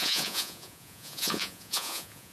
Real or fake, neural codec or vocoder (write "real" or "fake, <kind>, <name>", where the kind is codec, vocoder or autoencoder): fake, vocoder, Vocos